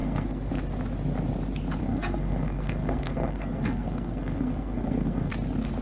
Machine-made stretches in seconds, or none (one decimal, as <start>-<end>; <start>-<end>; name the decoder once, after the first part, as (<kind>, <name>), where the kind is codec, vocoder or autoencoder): 0.0-0.5 (codec, SNAC); 1.8-5.3

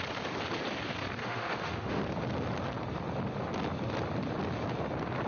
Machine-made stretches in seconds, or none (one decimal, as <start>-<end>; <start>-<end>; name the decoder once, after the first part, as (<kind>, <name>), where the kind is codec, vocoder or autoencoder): 1.2-2.0 (autoencoder, DAC-VAE)

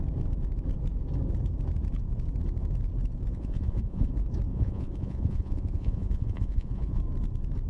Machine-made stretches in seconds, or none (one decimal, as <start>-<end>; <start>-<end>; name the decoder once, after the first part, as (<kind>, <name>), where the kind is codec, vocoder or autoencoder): 3.3-4.1 (vocoder, Vocos); 4.5-7.0

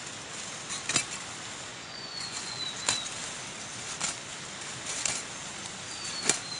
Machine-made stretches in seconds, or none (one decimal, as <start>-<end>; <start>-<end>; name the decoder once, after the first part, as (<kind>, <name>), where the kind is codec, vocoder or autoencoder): 1.7-2.6 (vocoder, Vocos)

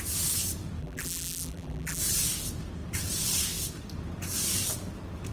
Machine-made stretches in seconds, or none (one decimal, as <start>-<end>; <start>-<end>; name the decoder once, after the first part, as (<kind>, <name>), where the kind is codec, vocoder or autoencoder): 0.8-2.0 (vocoder, BigVGAN v2)